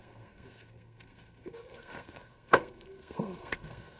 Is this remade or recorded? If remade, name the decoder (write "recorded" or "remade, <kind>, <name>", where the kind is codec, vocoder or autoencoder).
remade, codec, SNAC